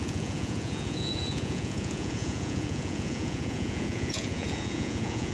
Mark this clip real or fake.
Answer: fake